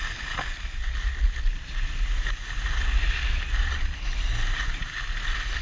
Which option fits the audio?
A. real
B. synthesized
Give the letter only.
A